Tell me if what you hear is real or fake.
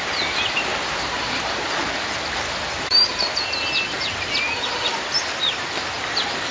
real